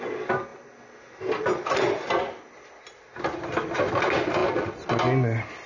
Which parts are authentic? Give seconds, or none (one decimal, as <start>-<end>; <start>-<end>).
0.0-5.7